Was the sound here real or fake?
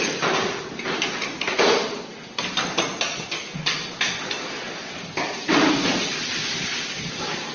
real